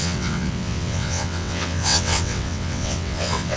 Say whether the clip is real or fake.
fake